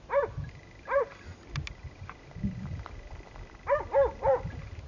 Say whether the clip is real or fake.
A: real